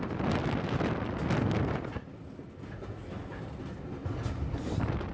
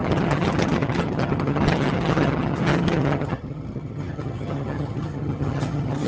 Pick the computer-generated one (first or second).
second